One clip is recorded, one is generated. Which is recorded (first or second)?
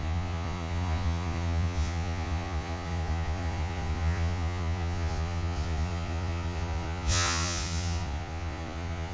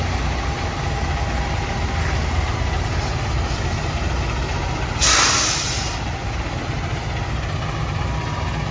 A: second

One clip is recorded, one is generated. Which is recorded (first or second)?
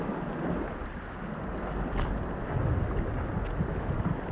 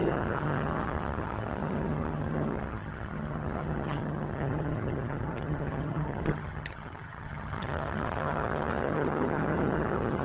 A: first